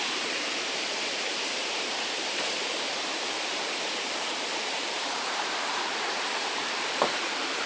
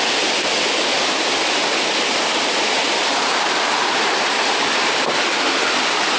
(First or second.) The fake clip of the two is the first